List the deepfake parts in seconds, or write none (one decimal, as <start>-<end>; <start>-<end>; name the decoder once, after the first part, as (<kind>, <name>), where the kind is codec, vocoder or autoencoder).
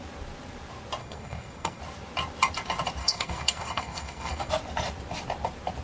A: 1.0-1.8 (codec, SNAC); 3.0-4.5